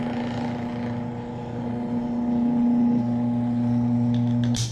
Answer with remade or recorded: recorded